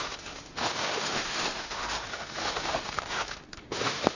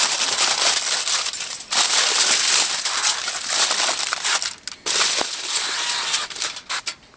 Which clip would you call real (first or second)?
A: second